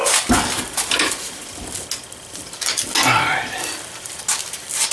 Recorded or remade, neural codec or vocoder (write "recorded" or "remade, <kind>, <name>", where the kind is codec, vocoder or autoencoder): recorded